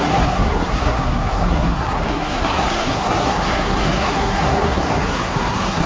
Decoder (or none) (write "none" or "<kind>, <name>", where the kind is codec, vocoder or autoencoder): codec, SNAC